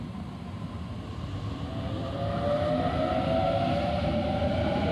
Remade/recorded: recorded